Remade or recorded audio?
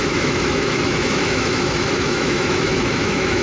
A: remade